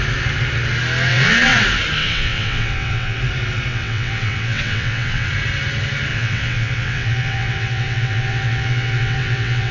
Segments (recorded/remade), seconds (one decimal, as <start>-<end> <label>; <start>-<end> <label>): 0.0-1.1 recorded; 1.1-1.6 remade; 1.6-2.0 recorded; 2.0-3.2 remade; 3.2-3.7 recorded; 3.7-5.3 remade; 5.3-6.1 recorded; 6.1-9.7 remade